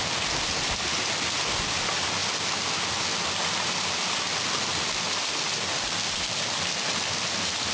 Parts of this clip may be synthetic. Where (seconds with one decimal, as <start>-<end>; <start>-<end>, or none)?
none